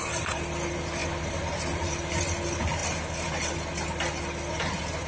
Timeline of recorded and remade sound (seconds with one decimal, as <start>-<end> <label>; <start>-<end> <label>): 0.0-1.0 recorded; 1.0-2.2 remade; 2.2-5.1 recorded